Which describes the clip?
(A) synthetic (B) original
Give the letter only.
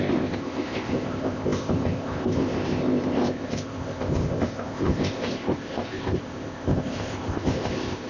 A